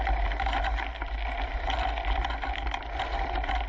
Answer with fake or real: real